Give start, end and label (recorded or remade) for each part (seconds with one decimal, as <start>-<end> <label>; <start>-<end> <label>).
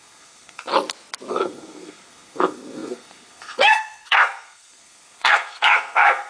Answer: 0.0-0.7 remade; 0.7-1.3 recorded; 1.3-6.3 remade